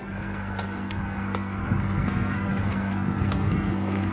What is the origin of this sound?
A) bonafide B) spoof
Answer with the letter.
B